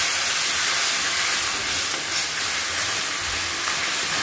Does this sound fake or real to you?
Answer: real